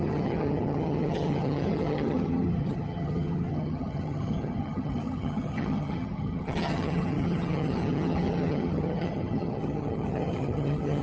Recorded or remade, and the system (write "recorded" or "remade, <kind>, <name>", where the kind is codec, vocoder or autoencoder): remade, vocoder, HiFi-GAN